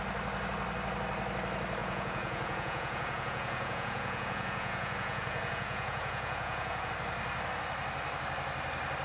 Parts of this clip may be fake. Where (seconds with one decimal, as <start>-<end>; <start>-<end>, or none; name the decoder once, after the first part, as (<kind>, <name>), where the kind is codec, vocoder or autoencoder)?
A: 1.8-6.9 (vocoder, Vocos)